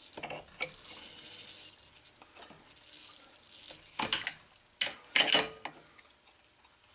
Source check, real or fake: real